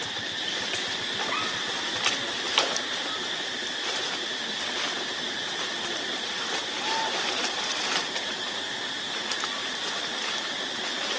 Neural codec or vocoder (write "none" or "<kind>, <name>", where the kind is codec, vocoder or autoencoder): none